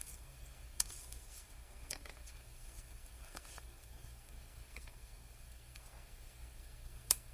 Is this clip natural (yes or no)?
no